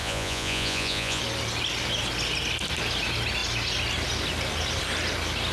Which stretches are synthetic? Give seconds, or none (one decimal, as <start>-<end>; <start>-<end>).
0.0-1.2